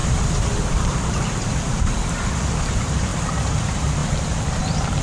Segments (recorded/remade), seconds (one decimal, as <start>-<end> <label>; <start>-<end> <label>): 0.0-0.6 recorded; 0.6-5.0 remade